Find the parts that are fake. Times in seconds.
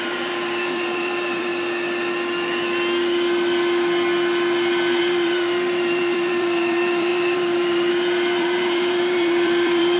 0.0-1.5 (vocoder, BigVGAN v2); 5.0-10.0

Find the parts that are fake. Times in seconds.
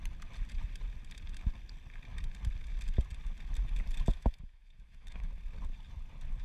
4.1-5.3 (autoencoder, DAC-VAE)